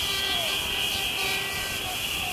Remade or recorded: recorded